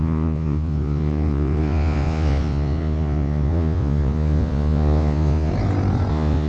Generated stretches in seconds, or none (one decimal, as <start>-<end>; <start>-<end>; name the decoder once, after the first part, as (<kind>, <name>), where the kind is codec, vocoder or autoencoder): 0.0-5.5 (vocoder, Vocos); 6.1-6.5